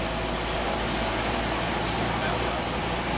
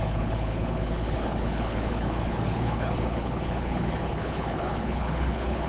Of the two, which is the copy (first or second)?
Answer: second